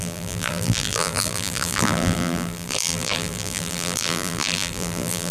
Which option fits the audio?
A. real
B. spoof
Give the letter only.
B